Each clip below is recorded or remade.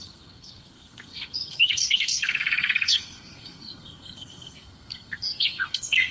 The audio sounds remade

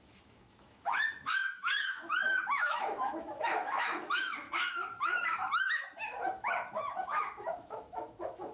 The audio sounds remade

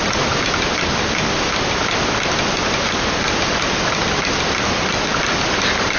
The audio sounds recorded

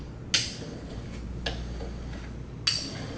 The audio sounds recorded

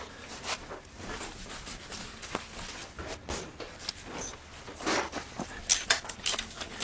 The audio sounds recorded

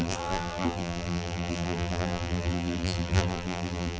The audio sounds remade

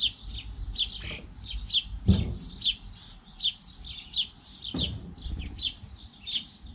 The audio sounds recorded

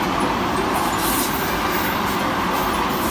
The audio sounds recorded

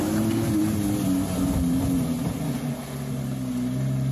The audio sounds recorded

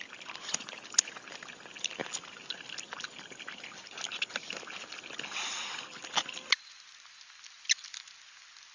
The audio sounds recorded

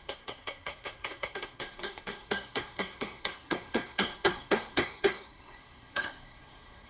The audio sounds remade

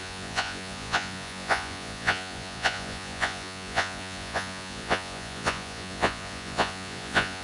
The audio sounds remade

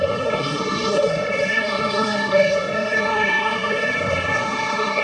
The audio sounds remade